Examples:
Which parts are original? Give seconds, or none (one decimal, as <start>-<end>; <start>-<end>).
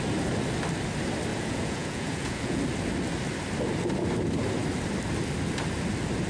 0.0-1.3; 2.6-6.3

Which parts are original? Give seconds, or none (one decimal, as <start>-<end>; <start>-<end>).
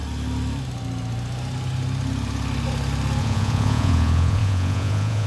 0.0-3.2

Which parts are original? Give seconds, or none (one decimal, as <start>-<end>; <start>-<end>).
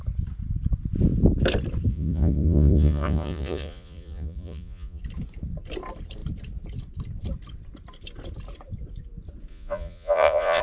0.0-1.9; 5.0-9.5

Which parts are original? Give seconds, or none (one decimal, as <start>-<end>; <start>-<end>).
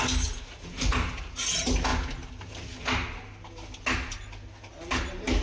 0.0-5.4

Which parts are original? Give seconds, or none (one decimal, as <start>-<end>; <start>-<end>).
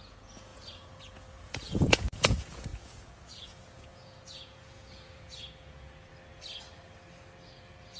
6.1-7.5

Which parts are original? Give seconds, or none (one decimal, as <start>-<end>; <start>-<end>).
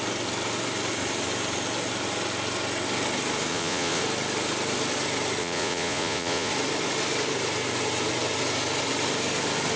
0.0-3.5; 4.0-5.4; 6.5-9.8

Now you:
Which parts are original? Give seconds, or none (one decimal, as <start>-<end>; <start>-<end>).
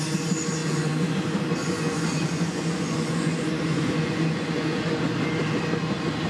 0.0-0.6; 1.1-1.6; 4.8-6.3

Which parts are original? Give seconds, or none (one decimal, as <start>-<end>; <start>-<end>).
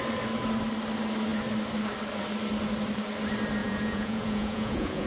0.0-3.6